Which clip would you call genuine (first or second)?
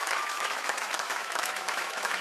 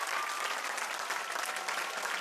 second